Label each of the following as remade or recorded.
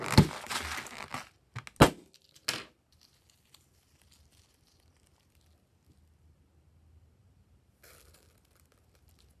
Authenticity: recorded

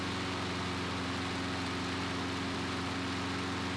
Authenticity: recorded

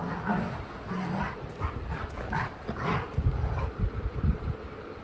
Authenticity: recorded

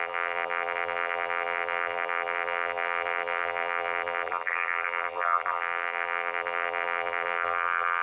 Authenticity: remade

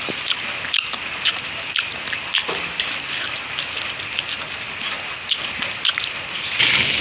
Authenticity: recorded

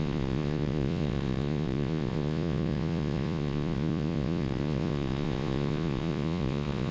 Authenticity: remade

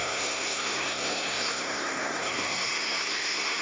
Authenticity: remade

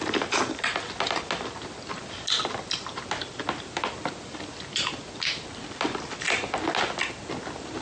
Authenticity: recorded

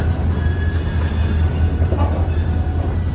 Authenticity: recorded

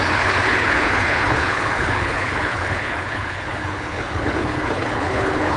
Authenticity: remade